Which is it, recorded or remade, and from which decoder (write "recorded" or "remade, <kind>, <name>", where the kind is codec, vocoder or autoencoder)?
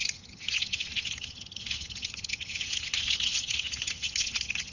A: remade, vocoder, HiFi-GAN